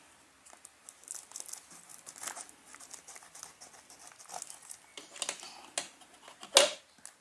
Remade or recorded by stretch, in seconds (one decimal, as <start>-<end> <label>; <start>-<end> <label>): 0.0-7.2 recorded